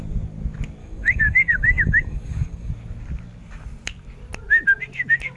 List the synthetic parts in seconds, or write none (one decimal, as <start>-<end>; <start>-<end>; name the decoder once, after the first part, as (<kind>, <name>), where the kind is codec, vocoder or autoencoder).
0.8-2.7 (codec, DAC)